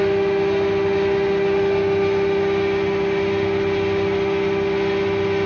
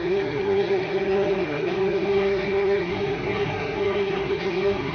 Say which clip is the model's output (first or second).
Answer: second